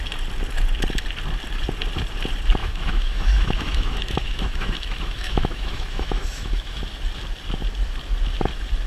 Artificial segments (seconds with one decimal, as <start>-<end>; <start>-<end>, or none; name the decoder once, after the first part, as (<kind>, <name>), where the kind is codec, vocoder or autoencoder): 2.6-6.8 (autoencoder, DAC-VAE)

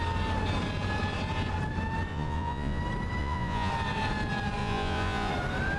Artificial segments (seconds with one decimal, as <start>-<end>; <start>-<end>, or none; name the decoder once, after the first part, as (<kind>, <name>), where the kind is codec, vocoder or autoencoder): 2.1-2.8 (vocoder, Vocos); 3.2-3.7; 4.6-5.3

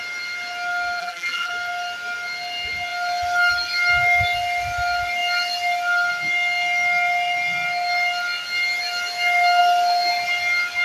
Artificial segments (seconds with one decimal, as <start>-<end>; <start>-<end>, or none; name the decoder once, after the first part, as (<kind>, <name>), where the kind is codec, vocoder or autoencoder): 1.0-1.5 (vocoder, BigVGAN v2)

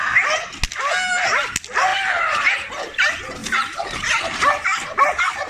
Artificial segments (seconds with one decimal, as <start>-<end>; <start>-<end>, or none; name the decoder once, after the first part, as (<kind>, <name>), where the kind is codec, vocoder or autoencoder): 1.9-2.7 (vocoder, BigVGAN v2); 3.4-4.2; 4.7-5.5

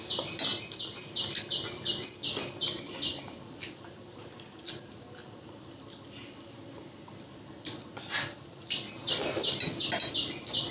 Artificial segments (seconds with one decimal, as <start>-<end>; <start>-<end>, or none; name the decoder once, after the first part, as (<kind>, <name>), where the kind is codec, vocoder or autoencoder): none